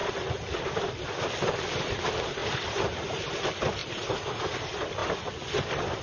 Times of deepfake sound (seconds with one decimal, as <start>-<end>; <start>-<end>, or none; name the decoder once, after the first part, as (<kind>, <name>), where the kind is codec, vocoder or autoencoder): 0.6-2.4 (vocoder, BigVGAN v2); 3.0-6.0